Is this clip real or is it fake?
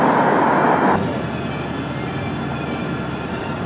real